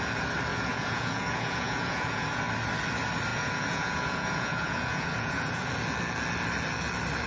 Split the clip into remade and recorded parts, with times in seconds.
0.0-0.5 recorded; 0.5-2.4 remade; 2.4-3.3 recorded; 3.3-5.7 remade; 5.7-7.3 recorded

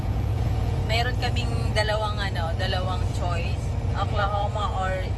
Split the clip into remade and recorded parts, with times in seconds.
0.0-0.8 remade; 0.8-3.9 recorded; 3.9-5.2 remade

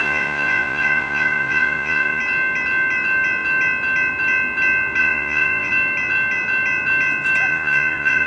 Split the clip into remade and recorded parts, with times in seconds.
0.0-2.2 remade; 2.2-5.0 recorded; 5.0-5.7 remade; 5.7-7.5 recorded; 7.5-8.3 remade

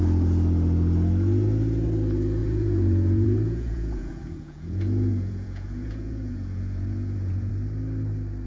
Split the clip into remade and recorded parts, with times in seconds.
0.0-2.4 recorded; 2.4-7.5 remade; 7.5-8.5 recorded

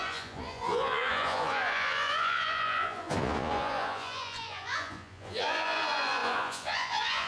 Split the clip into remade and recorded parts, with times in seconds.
0.0-7.3 remade